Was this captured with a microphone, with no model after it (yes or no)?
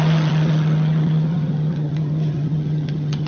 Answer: no